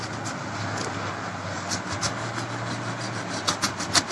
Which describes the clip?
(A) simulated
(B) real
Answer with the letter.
B